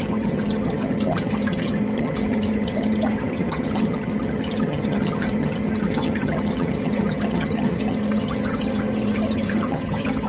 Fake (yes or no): yes